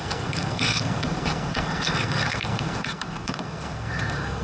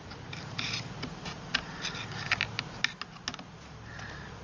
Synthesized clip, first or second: first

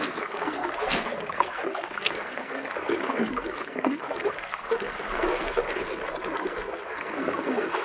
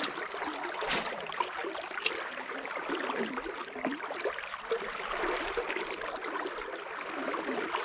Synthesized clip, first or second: first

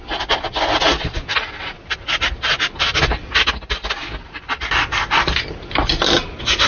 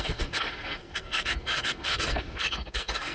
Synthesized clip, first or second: second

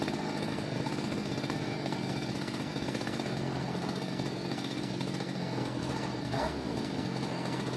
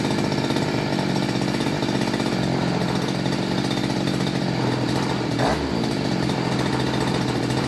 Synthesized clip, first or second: first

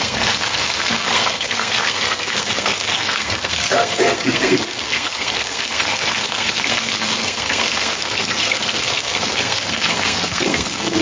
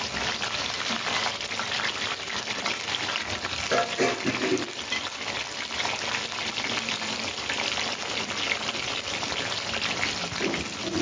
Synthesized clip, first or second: first